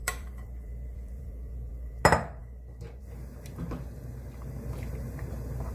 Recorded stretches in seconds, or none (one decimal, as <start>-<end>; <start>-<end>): 2.0-5.7